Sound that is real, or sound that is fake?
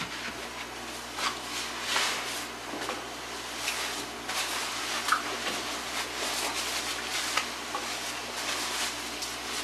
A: real